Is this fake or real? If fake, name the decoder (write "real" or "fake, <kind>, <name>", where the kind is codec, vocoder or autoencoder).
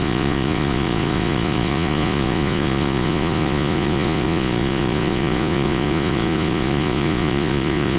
fake, vocoder, Vocos